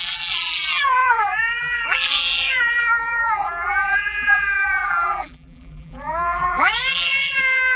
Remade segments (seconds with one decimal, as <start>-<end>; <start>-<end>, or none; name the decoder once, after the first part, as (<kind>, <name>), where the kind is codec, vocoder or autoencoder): 0.0-7.8 (vocoder, BigVGAN v2)